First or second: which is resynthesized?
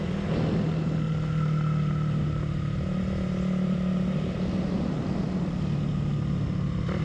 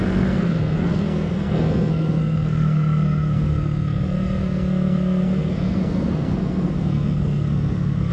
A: second